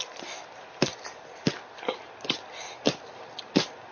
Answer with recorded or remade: recorded